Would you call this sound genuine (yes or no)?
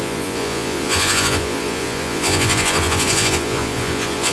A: no